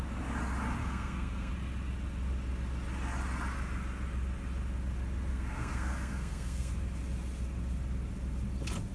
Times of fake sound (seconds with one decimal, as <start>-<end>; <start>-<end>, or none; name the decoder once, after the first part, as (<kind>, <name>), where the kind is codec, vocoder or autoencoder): 0.8-1.5 (codec, SNAC); 5.3-6.7